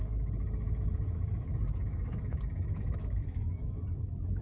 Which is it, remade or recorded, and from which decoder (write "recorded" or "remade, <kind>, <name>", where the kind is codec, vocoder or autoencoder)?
remade, autoencoder, DAC-VAE